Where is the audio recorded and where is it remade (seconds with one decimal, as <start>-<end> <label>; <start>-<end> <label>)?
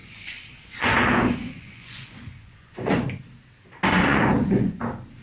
0.0-3.0 remade; 3.0-3.9 recorded; 3.9-4.8 remade; 4.8-5.2 recorded